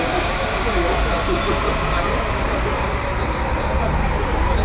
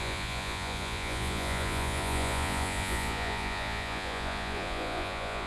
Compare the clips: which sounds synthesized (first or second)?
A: second